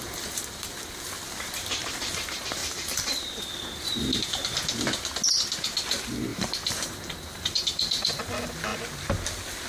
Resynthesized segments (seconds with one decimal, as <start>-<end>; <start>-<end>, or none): 2.6-3.4; 6.3-8.2